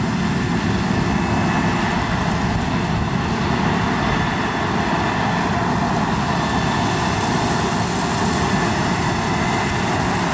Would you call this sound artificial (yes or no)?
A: no